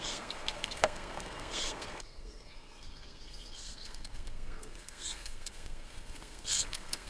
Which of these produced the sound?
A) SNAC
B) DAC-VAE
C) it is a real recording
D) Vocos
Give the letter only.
A